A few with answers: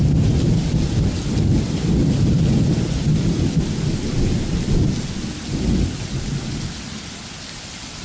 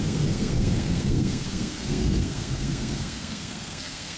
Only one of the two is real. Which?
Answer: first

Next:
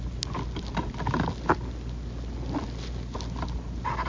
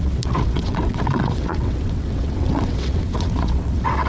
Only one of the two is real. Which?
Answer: first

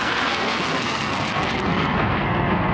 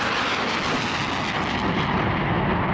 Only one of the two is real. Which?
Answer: second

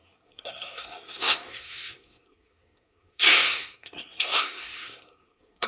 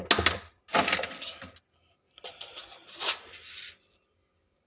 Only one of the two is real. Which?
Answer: second